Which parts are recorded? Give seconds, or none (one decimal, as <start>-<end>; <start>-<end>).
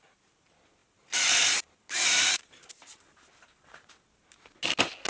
0.0-0.8; 3.9-5.1